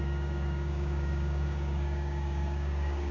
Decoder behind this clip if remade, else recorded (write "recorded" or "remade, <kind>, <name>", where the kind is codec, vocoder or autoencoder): remade, codec, DAC